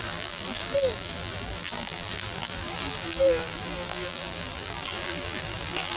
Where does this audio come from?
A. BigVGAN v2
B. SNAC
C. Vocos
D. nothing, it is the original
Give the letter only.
A